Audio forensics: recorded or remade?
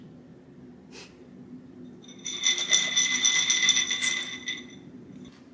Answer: recorded